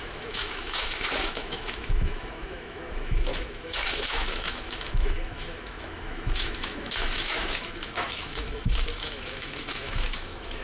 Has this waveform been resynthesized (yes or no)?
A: yes